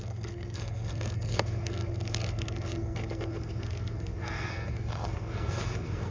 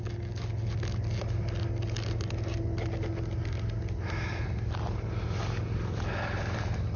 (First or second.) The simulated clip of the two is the first